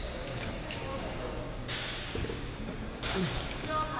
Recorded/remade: remade